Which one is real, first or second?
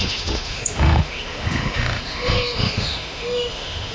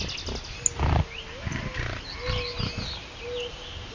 second